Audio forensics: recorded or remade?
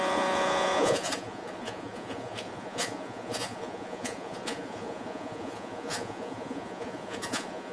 remade